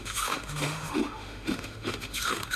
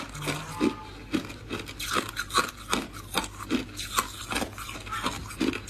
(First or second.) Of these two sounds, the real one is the second